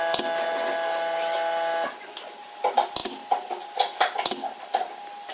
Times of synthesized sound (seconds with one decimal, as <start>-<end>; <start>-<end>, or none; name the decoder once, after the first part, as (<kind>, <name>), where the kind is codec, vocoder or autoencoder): none